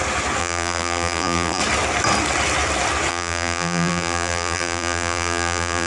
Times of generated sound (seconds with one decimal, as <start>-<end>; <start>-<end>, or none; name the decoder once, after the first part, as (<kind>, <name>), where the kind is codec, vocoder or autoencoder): 0.4-1.6 (vocoder, BigVGAN v2); 3.1-5.9